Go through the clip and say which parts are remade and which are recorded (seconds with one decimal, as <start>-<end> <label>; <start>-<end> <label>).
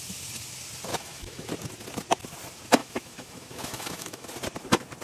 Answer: 0.0-0.9 recorded; 0.9-1.5 remade; 1.5-2.8 recorded; 2.8-4.3 remade; 4.3-5.0 recorded